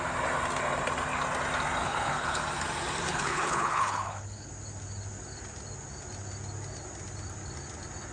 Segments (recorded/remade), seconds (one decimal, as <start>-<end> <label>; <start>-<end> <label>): 0.0-1.8 recorded; 1.8-2.4 remade; 2.4-3.1 recorded; 3.1-4.5 remade; 4.5-8.1 recorded